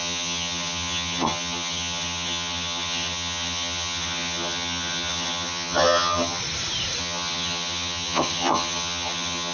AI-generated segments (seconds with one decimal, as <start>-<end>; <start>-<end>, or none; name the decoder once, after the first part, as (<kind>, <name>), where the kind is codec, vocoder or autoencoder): 0.0-6.4 (vocoder, HiFi-GAN); 7.0-9.5